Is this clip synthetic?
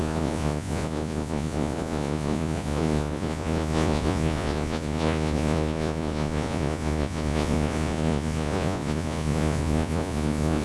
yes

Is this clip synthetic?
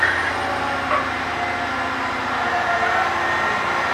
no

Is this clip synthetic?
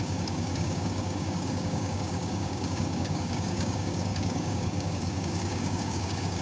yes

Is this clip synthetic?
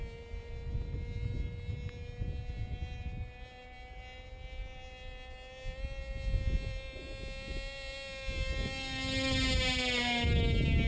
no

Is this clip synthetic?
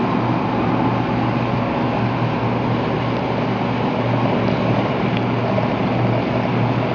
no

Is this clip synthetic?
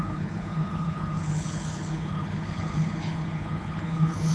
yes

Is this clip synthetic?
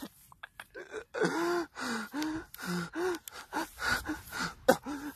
no